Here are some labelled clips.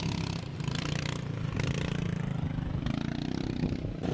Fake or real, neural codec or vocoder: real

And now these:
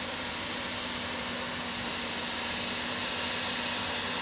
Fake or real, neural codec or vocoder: real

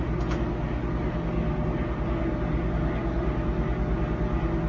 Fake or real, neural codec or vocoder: real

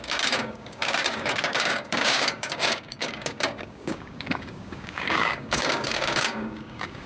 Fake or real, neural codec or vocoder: fake, codec, DAC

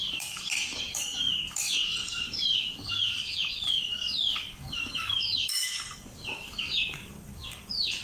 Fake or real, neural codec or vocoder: fake, codec, DAC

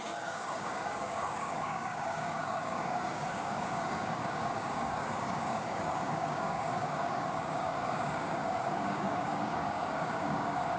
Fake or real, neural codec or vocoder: fake, codec, DAC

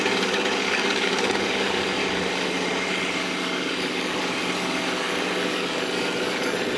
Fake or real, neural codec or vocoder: fake, codec, DAC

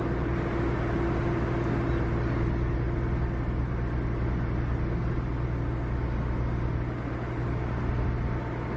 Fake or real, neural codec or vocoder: real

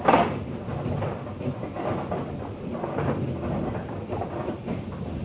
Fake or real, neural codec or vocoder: real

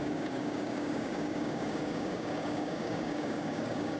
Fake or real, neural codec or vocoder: fake, codec, DAC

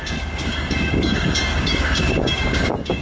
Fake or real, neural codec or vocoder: fake, codec, DAC